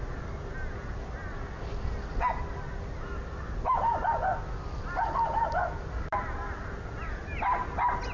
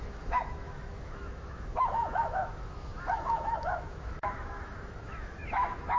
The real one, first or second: first